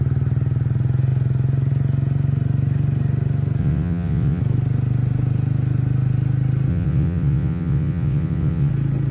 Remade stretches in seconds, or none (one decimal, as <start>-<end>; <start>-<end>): 3.6-4.4; 6.7-8.7